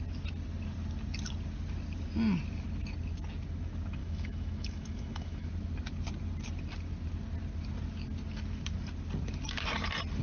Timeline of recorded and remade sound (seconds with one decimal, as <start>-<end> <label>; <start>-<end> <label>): 0.0-4.0 recorded; 4.0-5.5 remade; 5.5-10.2 recorded